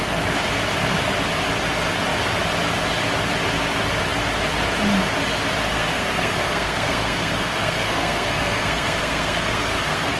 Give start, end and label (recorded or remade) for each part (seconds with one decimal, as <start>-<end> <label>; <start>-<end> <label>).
0.0-5.7 recorded; 5.7-10.2 remade

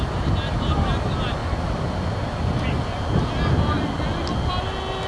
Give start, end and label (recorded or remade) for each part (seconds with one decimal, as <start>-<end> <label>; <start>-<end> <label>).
0.0-5.1 recorded

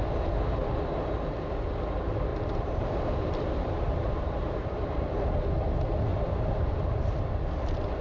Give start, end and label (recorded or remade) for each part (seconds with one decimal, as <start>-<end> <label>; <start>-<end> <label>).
0.0-2.3 recorded; 2.3-5.4 remade; 5.4-6.1 recorded; 6.1-6.8 remade; 6.8-8.0 recorded